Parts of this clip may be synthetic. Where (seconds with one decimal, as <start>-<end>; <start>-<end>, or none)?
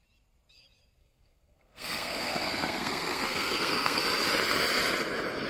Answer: 1.0-4.0